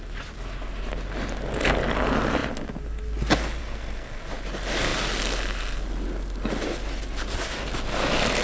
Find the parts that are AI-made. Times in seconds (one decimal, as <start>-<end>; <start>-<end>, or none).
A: 3.6-4.2